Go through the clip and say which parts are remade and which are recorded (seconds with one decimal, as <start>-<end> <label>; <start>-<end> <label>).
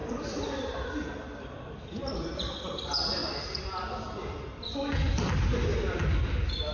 0.0-2.6 remade; 2.6-3.2 recorded; 3.2-5.4 remade; 5.4-6.7 recorded